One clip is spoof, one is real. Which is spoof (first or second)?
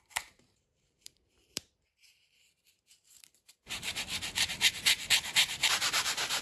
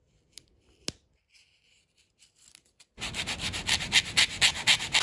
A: first